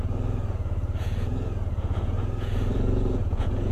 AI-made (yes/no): yes